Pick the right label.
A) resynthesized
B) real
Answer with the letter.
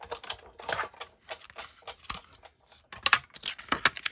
B